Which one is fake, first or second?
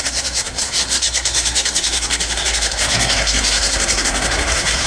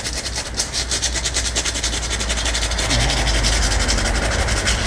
first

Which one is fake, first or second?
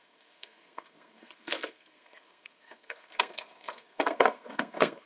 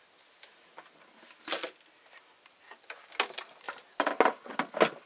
first